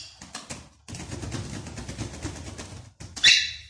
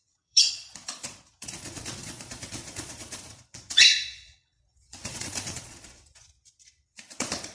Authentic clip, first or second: first